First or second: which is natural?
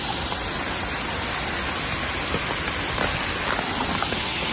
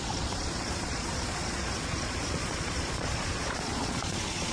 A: first